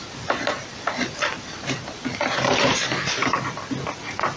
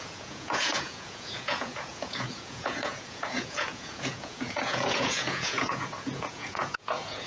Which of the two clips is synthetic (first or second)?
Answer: second